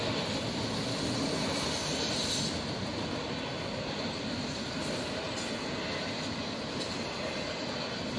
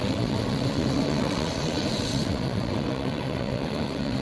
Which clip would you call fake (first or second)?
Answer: second